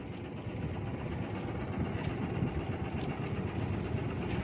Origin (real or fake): real